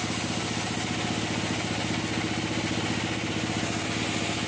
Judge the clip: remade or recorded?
recorded